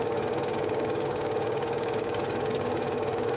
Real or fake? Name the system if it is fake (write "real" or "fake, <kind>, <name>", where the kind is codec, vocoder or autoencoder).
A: fake, codec, DAC